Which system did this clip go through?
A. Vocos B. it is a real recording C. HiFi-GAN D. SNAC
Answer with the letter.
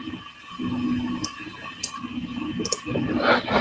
B